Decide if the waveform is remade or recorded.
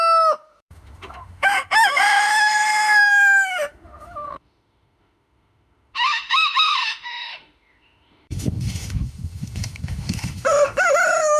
remade